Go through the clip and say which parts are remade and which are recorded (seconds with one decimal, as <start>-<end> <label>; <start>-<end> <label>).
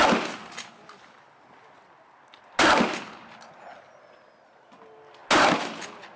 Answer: 0.0-6.2 recorded